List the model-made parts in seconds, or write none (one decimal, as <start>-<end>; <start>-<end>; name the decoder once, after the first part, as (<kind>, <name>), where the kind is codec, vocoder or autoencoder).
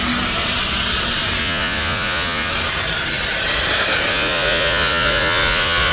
1.4-2.5 (vocoder, Vocos); 4.1-5.9